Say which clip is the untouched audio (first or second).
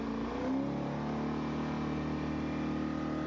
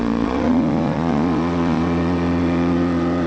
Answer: first